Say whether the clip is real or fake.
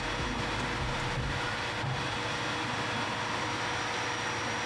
real